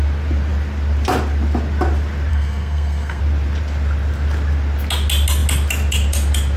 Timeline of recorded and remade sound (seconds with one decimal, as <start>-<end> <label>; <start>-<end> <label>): 0.0-2.3 recorded; 2.3-3.2 remade; 3.2-6.6 recorded